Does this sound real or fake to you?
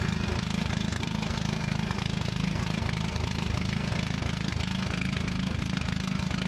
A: fake